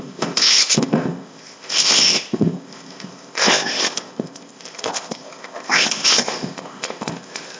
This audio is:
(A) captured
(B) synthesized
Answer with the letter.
B